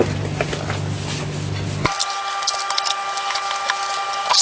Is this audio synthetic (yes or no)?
no